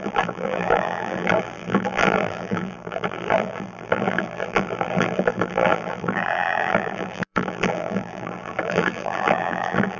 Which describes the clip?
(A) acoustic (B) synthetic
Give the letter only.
B